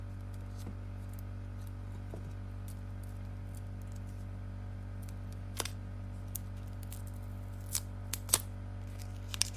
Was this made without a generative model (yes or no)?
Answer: yes